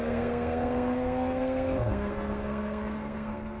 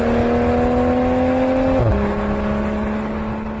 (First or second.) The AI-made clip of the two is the first